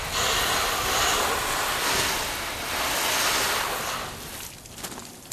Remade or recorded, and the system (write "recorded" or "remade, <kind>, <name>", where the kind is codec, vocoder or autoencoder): recorded